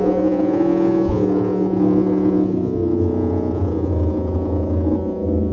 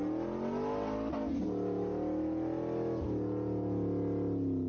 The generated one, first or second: first